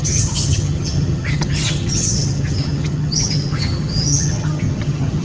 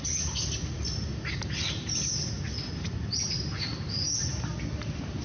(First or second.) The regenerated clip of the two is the first